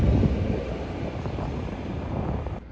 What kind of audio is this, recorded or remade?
recorded